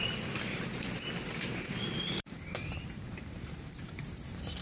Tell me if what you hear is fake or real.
fake